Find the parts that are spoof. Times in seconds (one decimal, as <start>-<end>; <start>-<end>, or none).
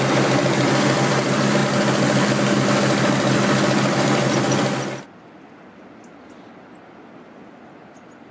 none